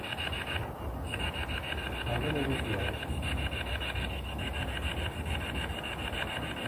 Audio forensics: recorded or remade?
recorded